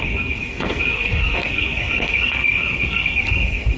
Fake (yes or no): yes